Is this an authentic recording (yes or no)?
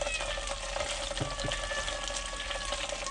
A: yes